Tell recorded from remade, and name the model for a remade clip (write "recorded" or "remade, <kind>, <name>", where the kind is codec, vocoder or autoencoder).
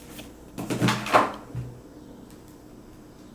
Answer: recorded